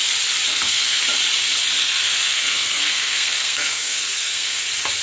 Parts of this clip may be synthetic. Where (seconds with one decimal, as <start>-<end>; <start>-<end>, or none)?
0.5-1.0; 1.8-4.6